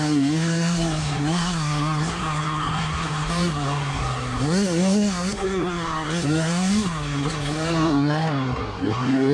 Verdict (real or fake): fake